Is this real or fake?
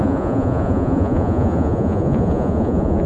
fake